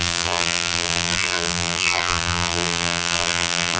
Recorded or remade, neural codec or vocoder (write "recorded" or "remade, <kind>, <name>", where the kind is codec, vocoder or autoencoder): remade, vocoder, BigVGAN v2